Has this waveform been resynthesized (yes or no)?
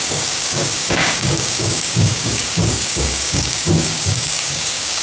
yes